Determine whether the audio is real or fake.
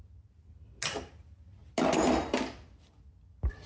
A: real